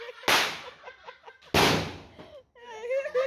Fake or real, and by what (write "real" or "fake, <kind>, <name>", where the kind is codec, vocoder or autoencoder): real